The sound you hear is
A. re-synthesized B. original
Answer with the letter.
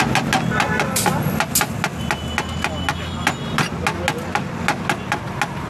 B